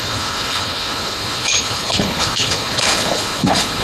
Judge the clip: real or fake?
fake